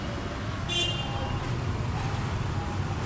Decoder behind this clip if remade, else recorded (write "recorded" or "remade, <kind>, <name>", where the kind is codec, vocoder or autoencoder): recorded